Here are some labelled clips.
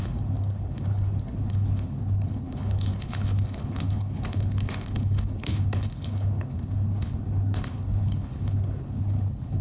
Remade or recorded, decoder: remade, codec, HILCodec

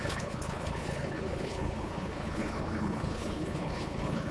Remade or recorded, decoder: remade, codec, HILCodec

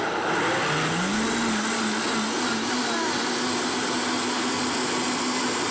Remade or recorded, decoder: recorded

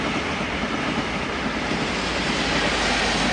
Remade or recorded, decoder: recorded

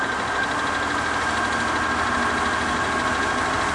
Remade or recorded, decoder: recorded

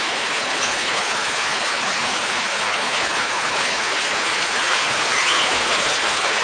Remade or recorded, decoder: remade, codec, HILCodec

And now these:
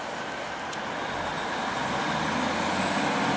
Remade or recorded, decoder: recorded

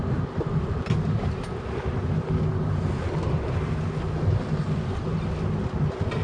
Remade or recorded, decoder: recorded